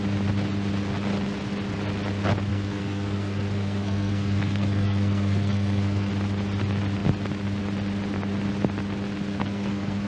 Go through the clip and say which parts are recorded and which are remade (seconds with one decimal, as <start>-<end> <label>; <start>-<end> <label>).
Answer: 0.0-2.5 recorded; 2.5-6.1 remade; 6.1-9.3 recorded; 9.3-10.1 remade